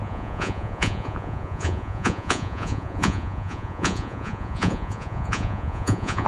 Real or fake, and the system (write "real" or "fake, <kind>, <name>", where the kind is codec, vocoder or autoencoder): fake, vocoder, Vocos